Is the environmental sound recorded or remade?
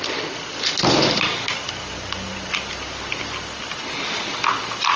recorded